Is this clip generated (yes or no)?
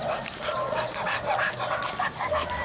no